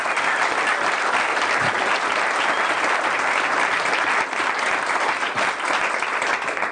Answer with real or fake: real